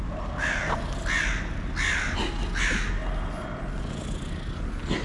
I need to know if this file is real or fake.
real